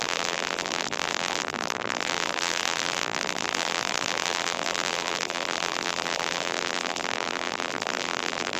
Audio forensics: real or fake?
fake